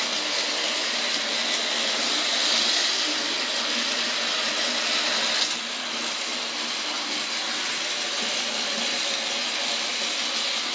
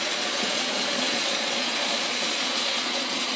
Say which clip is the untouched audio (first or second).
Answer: first